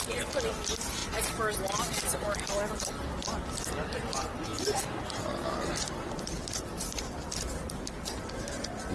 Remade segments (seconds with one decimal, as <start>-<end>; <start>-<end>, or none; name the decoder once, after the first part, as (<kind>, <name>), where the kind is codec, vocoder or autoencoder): 0.0-1.0 (vocoder, BigVGAN v2); 2.7-8.9